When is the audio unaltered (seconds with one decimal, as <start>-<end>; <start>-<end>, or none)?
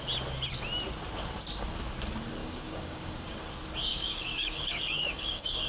0.0-2.4; 3.4-3.9